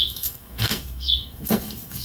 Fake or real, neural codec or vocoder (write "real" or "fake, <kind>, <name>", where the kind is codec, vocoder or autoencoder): fake, codec, SNAC